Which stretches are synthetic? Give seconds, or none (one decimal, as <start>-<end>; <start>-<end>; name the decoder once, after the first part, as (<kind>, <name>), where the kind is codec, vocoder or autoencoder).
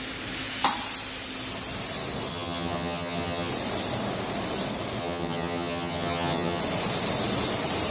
2.3-3.5 (vocoder, HiFi-GAN); 5.0-6.6